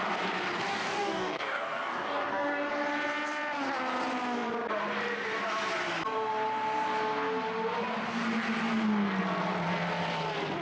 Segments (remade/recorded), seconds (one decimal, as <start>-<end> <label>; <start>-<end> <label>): 0.0-0.7 recorded; 0.7-2.7 remade; 2.7-10.6 recorded